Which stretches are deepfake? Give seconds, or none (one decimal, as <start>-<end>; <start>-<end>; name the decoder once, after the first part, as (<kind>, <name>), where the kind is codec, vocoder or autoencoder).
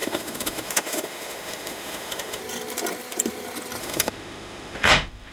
0.0-2.4 (autoencoder, DAC-VAE); 3.8-5.3